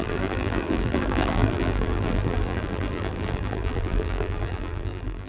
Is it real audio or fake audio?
fake